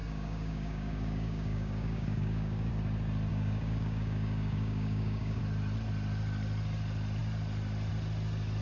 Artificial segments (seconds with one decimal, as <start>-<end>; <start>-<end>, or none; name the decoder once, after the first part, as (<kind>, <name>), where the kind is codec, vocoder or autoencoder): 0.0-2.7 (codec, DAC); 3.3-5.4

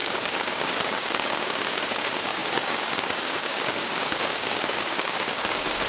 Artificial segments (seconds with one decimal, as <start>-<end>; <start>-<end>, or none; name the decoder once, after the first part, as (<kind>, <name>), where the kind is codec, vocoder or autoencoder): 0.0-5.9 (codec, DAC)